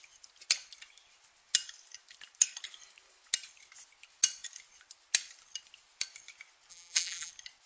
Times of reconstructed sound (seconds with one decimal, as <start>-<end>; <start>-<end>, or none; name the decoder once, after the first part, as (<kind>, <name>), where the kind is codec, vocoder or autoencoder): 6.7-7.3 (vocoder, BigVGAN v2)